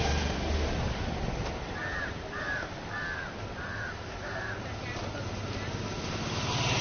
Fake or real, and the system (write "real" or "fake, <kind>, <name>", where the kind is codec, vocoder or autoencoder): real